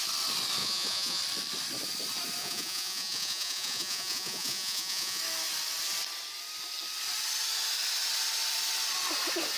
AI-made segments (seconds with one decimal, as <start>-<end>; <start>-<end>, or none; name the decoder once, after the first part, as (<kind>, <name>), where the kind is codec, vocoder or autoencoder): 0.6-1.2 (vocoder, Vocos); 2.4-5.2